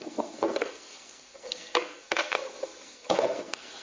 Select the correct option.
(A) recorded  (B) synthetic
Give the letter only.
B